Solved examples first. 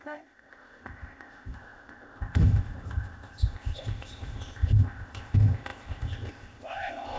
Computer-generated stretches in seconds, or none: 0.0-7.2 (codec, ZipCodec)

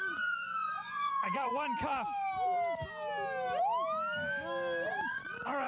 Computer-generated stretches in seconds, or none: 0.0-1.5 (vocoder, Vocos); 4.9-5.7